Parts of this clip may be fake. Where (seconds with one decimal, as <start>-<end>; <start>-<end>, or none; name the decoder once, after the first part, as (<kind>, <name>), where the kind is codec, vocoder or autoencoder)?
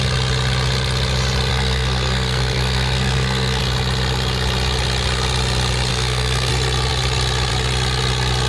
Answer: 1.5-3.6 (codec, SNAC); 5.9-6.5